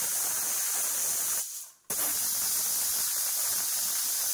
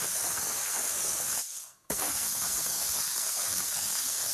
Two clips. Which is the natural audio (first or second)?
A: first